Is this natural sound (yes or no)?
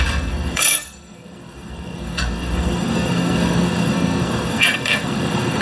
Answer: no